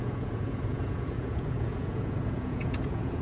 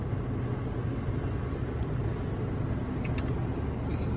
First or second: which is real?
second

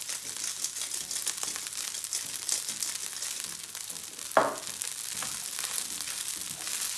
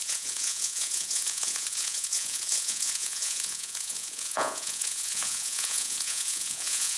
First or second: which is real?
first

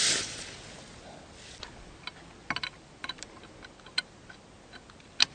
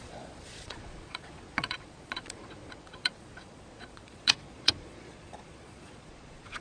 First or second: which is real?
first